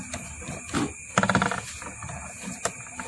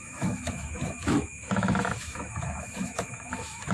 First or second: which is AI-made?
second